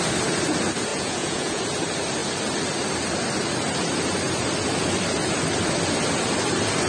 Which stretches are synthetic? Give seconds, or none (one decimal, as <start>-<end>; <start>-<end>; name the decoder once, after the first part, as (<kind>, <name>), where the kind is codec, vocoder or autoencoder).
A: 0.9-1.6 (vocoder, Vocos)